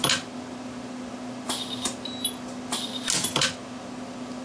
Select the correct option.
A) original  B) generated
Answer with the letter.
A